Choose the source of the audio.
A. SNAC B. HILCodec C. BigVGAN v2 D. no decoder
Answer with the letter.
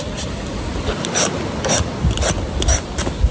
D